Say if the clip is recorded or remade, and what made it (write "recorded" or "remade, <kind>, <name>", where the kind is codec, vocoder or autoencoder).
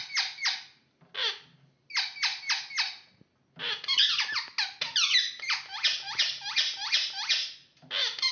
recorded